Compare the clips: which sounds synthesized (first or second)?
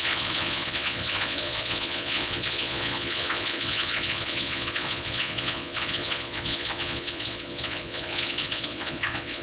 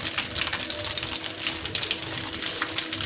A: first